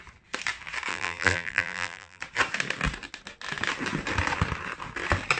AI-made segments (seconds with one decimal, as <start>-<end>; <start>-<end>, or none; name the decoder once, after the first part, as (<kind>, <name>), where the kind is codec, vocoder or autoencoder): 0.9-2.2 (vocoder, BigVGAN v2)

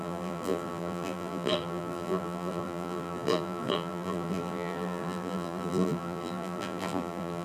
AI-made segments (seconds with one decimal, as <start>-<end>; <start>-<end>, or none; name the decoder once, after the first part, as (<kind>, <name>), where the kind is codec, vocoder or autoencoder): 0.0-7.4 (vocoder, BigVGAN v2)

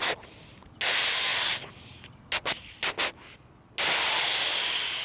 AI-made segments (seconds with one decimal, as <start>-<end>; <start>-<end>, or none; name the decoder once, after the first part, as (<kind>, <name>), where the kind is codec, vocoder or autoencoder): none

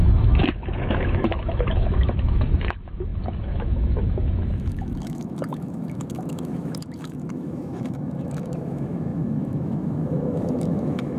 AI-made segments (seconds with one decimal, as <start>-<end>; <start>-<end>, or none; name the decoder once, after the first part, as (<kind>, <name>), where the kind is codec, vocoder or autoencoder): 0.0-11.2 (autoencoder, DAC-VAE)

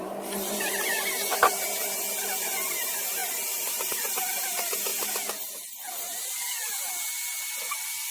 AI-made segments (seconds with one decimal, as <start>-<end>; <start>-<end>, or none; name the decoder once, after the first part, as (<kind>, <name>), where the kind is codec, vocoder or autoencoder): 0.0-4.9 (vocoder, BigVGAN v2)

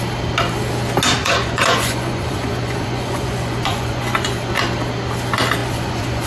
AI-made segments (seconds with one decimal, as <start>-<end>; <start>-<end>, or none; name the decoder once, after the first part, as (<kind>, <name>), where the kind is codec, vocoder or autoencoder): 1.2-4.5 (vocoder, Vocos); 5.6-6.3